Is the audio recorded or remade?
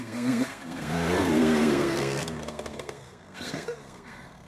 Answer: remade